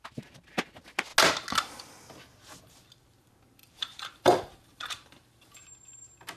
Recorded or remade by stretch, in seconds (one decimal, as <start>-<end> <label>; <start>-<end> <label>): 0.0-3.6 recorded; 3.6-5.7 remade; 5.7-6.4 recorded